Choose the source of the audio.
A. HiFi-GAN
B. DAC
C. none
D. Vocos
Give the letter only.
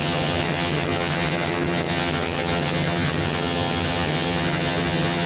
A